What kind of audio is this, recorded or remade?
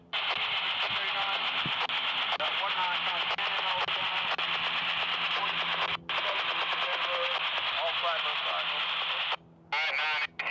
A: recorded